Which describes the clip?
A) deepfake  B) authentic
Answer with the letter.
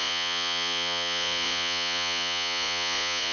A